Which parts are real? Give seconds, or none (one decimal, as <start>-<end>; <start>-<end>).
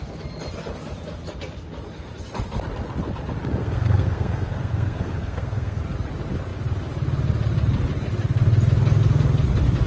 0.0-3.6; 5.8-9.9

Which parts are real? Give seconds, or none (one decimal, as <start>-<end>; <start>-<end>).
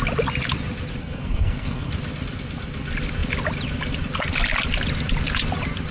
0.0-1.0; 1.9-5.9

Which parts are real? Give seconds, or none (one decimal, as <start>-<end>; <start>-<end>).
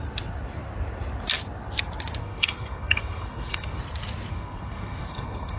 0.0-2.2; 3.8-4.3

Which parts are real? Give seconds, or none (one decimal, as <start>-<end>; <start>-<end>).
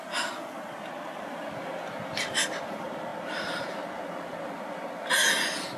0.0-5.8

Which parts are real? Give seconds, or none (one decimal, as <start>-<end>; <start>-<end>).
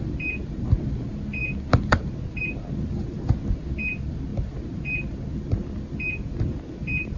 0.0-7.2